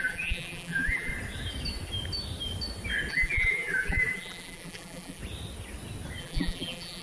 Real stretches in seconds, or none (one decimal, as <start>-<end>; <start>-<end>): 1.1-3.1; 5.2-6.2